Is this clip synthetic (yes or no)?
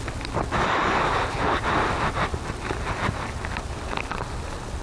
no